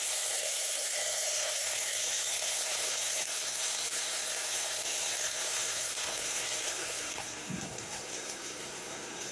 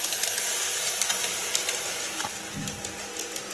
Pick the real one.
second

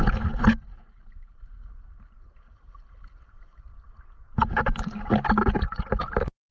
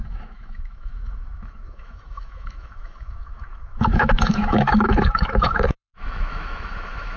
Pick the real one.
first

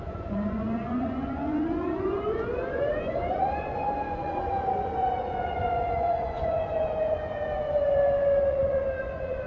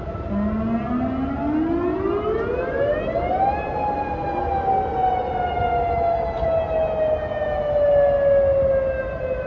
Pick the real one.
second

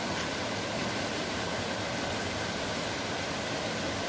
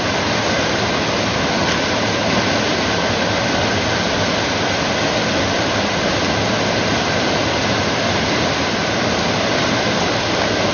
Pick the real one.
second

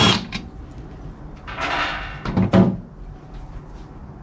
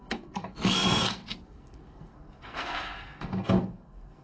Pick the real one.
first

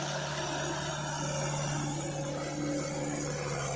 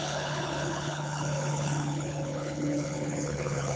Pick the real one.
first